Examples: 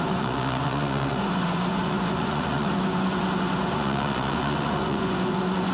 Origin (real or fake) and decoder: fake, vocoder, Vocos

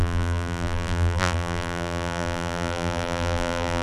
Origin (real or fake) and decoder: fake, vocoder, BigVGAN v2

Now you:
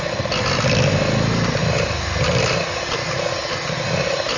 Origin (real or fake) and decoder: real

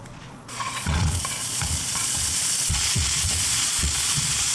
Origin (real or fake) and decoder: fake, vocoder, Vocos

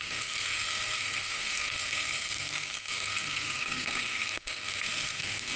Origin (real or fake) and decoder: fake, codec, SNAC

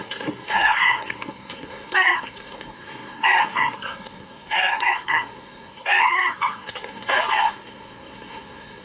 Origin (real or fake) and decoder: fake, codec, SNAC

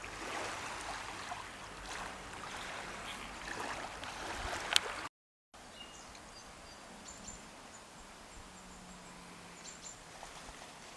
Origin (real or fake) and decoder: real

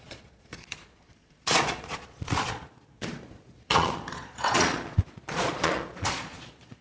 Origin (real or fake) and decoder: fake, vocoder, Vocos